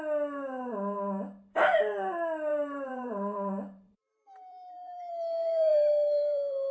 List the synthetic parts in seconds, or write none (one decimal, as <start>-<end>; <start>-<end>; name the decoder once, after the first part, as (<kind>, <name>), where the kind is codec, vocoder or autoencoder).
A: 2.5-5.1 (vocoder, BigVGAN v2); 5.7-6.7